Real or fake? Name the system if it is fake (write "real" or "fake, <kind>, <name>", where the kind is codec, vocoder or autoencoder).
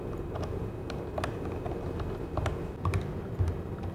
real